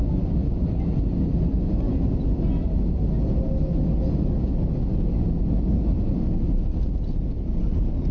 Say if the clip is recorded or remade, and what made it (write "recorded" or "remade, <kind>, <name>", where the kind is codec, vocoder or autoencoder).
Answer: recorded